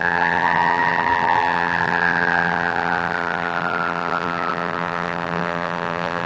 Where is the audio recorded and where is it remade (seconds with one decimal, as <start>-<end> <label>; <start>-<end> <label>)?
0.0-6.3 remade